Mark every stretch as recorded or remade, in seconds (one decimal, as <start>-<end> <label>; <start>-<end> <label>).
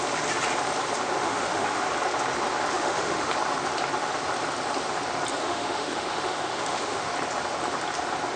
0.0-1.2 recorded; 1.2-1.8 remade; 1.8-2.7 recorded; 2.7-3.3 remade; 3.3-5.4 recorded; 5.4-7.1 remade; 7.1-8.4 recorded